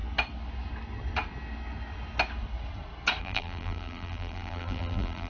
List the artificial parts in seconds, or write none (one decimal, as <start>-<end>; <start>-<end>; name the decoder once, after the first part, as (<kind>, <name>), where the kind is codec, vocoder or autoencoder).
3.2-5.3 (vocoder, BigVGAN v2)